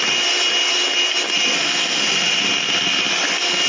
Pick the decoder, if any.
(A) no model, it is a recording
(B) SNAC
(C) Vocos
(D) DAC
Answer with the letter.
A